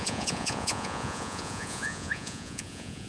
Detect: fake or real fake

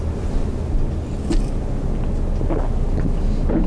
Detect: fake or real real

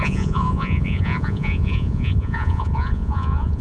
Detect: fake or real fake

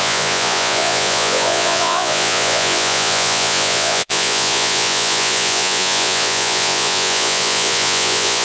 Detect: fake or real fake